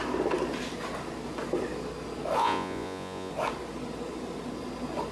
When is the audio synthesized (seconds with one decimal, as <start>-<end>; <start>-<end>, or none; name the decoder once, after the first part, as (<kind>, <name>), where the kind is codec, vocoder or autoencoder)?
2.4-3.3 (vocoder, Vocos)